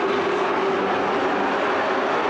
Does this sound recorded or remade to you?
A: recorded